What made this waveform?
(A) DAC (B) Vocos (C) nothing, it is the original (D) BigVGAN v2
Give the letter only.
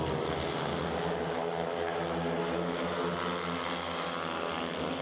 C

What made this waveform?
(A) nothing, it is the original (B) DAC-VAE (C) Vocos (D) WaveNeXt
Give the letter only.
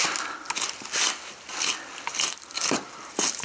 A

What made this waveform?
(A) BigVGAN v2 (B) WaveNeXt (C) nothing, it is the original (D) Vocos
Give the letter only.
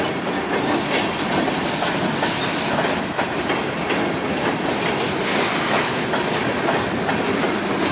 C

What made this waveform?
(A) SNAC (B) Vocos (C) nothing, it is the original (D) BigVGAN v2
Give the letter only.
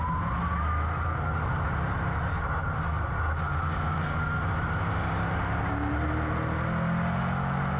C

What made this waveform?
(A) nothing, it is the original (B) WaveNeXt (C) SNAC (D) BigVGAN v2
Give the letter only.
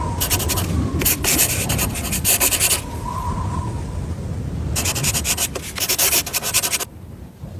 A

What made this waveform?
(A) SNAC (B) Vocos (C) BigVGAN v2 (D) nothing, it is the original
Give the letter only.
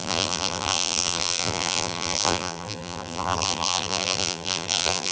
C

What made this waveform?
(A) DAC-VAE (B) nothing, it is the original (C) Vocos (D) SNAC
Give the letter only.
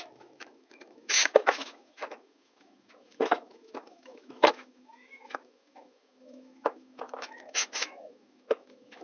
A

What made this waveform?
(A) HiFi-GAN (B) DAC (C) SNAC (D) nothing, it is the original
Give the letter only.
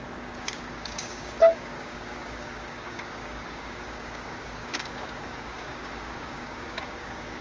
B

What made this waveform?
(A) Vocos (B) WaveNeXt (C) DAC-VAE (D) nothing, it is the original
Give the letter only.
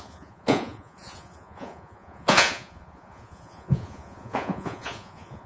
A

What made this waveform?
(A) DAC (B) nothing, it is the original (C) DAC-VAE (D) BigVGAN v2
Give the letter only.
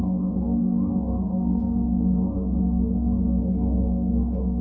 A